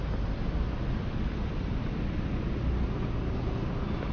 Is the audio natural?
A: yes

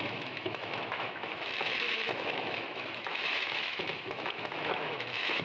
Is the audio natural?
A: no